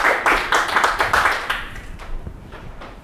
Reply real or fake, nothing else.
fake